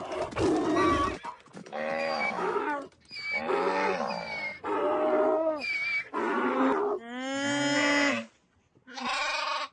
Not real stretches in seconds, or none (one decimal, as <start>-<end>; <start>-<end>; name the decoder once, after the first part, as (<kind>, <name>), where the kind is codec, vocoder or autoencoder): 1.6-2.6 (autoencoder, DAC-VAE)